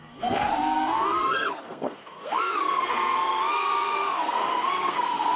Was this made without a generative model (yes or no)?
no